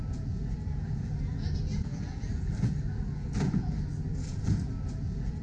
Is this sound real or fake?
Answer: fake